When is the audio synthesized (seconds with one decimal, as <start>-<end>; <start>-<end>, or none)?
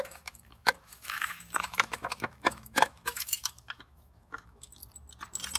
0.0-4.8